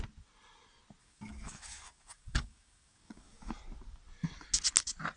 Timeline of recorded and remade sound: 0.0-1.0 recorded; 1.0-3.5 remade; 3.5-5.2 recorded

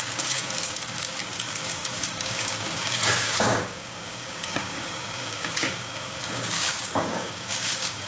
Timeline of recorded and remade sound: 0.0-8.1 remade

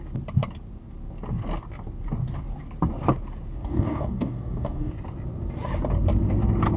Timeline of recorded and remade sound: 0.0-3.6 recorded; 3.6-4.9 remade; 4.9-6.8 recorded